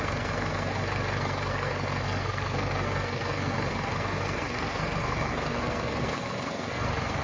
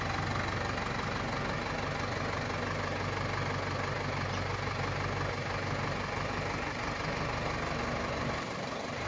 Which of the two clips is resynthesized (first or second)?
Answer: first